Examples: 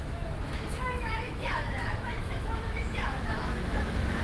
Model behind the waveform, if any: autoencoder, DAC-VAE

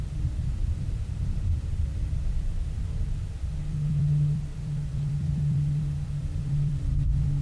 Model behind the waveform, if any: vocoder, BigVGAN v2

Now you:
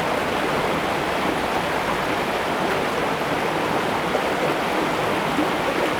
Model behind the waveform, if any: none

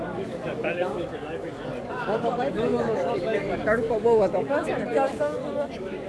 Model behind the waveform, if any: codec, DAC